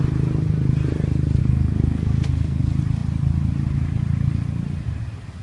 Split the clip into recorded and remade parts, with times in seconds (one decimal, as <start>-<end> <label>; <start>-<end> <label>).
0.0-1.4 recorded; 1.4-2.6 remade; 2.6-5.4 recorded